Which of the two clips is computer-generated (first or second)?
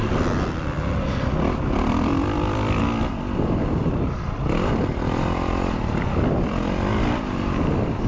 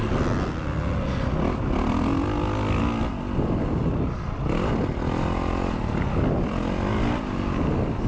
first